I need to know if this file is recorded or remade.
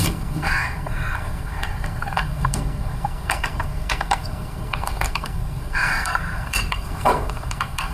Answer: remade